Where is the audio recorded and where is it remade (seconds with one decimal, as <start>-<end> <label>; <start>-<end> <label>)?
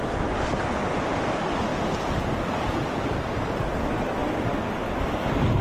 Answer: 0.0-5.6 recorded